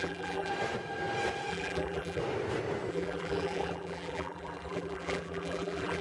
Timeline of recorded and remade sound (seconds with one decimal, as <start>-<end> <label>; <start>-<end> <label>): 0.0-0.5 remade; 0.5-1.5 recorded; 1.5-2.2 remade; 2.2-2.9 recorded; 2.9-6.0 remade